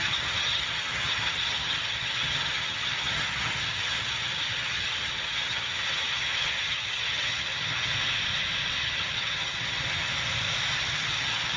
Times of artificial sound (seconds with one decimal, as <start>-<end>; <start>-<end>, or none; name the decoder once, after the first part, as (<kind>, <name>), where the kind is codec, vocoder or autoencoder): 0.0-7.9 (vocoder, HiFi-GAN); 8.8-10.1; 10.7-11.6